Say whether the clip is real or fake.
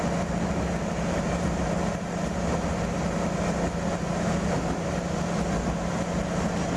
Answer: real